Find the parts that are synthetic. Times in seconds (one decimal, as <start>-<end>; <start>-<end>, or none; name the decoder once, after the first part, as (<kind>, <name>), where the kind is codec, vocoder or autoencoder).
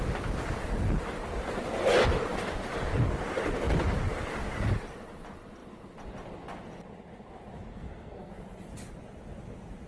7.7-8.3 (codec, SNAC)